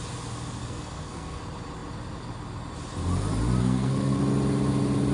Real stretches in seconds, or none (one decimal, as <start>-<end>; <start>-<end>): 0.0-0.6; 1.4-3.6; 4.2-5.1